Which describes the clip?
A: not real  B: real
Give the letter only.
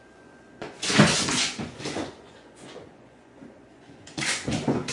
A